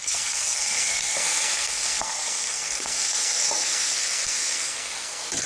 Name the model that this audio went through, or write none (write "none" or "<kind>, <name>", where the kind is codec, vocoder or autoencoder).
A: codec, SNAC